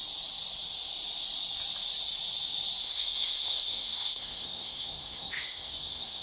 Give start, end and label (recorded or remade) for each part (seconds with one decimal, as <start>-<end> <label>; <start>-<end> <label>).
0.0-2.8 recorded; 2.8-6.2 remade